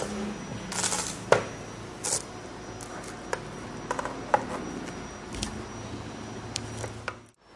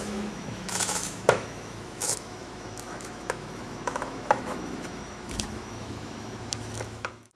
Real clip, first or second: first